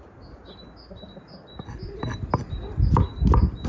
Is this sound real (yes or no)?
yes